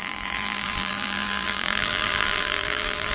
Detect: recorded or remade remade